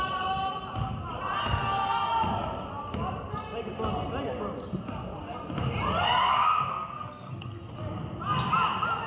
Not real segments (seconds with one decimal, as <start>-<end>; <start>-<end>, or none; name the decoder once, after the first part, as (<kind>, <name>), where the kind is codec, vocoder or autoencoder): 1.4-2.1 (codec, SNAC); 6.7-7.7